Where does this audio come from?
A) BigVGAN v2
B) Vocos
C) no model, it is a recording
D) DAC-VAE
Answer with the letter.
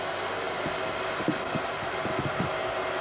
C